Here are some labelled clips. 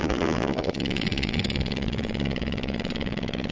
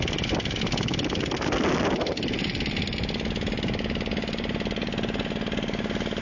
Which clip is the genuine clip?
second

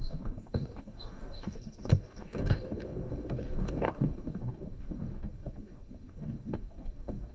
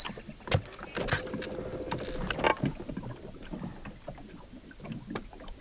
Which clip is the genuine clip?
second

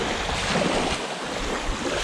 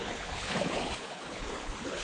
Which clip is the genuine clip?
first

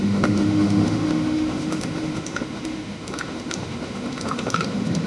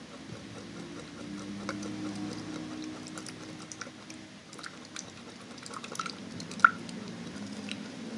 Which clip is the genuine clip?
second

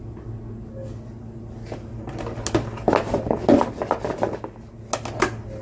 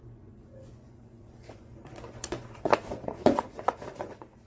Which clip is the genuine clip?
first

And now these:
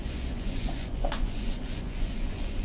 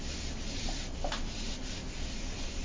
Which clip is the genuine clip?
second